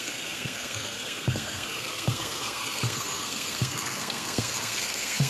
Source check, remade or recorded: remade